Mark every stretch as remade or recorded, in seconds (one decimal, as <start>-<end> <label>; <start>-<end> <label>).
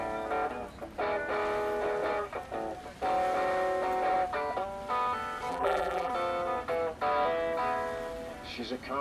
0.0-5.5 recorded; 5.5-6.1 remade; 6.1-9.0 recorded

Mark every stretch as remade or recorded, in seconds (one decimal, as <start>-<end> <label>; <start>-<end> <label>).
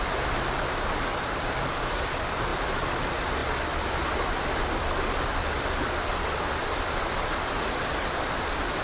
0.0-8.8 recorded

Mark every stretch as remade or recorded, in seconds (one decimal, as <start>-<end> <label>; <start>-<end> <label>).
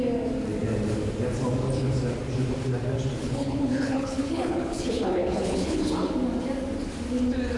0.0-3.2 recorded; 3.2-6.1 remade; 6.1-7.6 recorded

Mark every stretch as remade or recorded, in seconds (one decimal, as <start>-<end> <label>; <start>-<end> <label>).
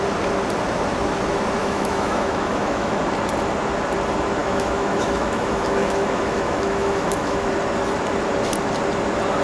0.0-1.6 recorded; 1.6-3.0 remade; 3.0-4.4 recorded; 4.4-7.5 remade; 7.5-9.4 recorded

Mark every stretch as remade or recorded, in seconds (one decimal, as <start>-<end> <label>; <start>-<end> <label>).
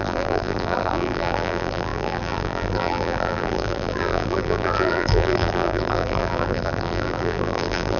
0.0-8.0 remade